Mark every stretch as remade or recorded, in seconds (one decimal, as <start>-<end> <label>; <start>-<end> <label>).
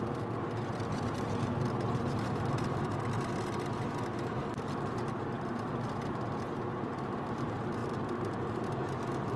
0.0-9.4 recorded